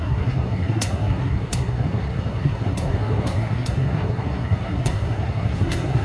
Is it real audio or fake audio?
fake